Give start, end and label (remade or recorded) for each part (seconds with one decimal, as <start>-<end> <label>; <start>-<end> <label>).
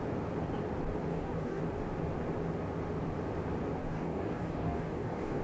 0.0-1.1 recorded; 1.1-1.6 remade; 1.6-3.8 recorded; 3.8-5.4 remade